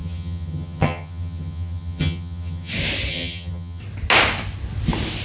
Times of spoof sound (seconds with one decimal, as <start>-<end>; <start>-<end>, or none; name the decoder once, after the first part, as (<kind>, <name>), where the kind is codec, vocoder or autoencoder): 0.0-2.7 (vocoder, HiFi-GAN); 3.1-3.8